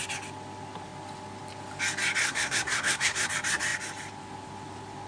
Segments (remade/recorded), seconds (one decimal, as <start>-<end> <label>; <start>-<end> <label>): 0.0-2.2 recorded; 2.2-3.3 remade; 3.3-5.1 recorded